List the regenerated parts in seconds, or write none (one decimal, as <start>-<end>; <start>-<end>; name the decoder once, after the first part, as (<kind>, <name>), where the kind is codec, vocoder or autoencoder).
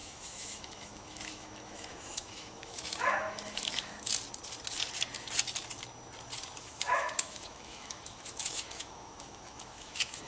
0.0-4.1 (autoencoder, DAC-VAE); 6.6-10.3